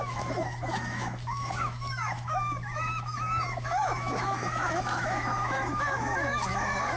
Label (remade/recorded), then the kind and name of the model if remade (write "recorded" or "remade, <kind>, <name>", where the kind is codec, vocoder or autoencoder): remade, autoencoder, DAC-VAE